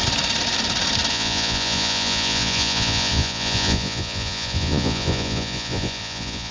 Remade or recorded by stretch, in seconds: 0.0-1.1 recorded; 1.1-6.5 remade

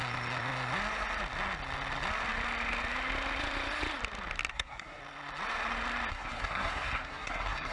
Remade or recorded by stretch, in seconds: 0.0-4.5 recorded; 4.5-5.0 remade; 5.0-6.1 recorded; 6.1-7.7 remade

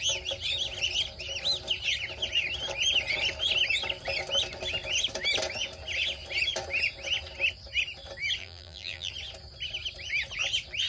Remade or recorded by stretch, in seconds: 0.0-8.4 recorded; 8.4-9.1 remade; 9.1-10.9 recorded

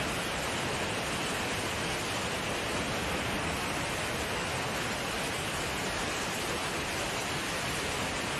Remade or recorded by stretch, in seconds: 0.0-8.4 recorded

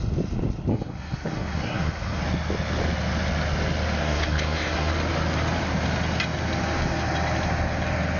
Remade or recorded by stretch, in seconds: 0.0-0.7 recorded; 0.7-2.2 remade; 2.2-4.0 recorded; 4.0-4.9 remade; 4.9-8.2 recorded

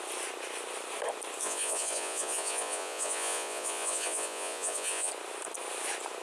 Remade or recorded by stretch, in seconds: 0.0-1.4 recorded; 1.4-5.1 remade; 5.1-6.2 recorded

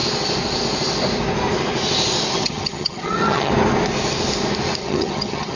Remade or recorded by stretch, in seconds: 0.0-2.3 recorded; 2.3-3.5 remade; 3.5-4.8 recorded; 4.8-5.6 remade